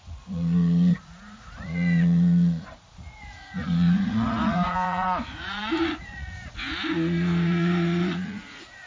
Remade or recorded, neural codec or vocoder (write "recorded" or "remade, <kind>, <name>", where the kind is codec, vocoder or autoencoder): remade, vocoder, Vocos